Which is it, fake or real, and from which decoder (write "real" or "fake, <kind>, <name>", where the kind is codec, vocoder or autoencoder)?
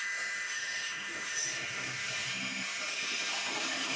fake, autoencoder, DAC-VAE